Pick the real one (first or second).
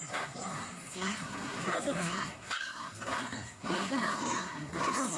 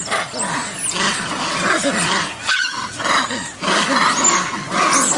second